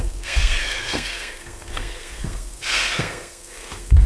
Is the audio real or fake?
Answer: fake